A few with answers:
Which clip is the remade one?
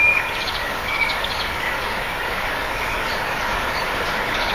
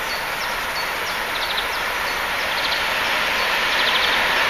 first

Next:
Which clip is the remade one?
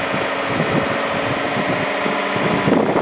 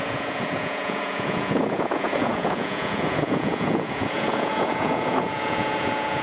second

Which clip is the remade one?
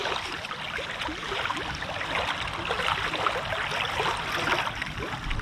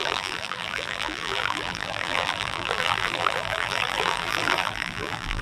second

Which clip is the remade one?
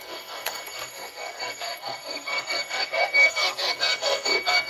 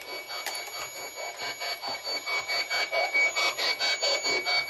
first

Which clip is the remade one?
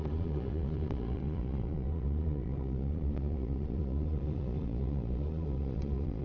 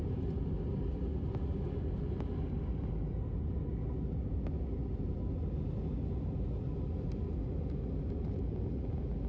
first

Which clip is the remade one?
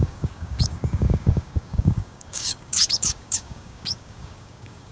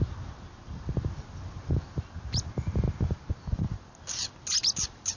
first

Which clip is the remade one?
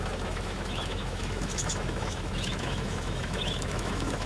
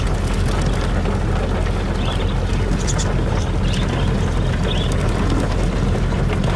first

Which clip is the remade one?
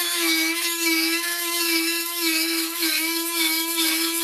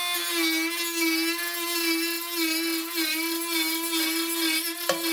first